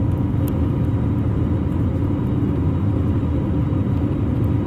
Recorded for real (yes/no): yes